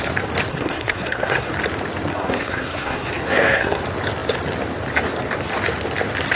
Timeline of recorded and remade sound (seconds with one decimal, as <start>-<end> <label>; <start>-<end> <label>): 0.0-0.5 recorded; 0.5-1.5 remade; 1.5-2.1 recorded; 2.1-3.8 remade; 3.8-6.4 recorded

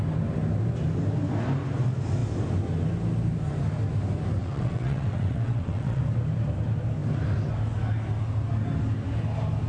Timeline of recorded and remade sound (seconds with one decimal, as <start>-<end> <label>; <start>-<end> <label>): 0.0-4.4 recorded; 4.4-6.0 remade; 6.0-9.7 recorded

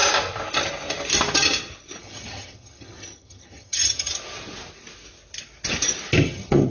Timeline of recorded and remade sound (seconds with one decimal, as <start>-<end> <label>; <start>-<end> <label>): 0.0-2.0 recorded; 2.0-4.1 remade; 4.1-6.2 recorded; 6.2-6.7 remade

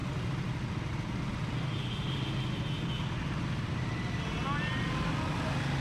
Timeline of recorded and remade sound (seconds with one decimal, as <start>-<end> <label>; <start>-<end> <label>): 0.0-5.8 recorded